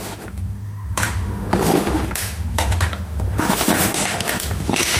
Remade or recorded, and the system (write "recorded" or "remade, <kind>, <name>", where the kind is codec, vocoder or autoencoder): remade, autoencoder, DAC-VAE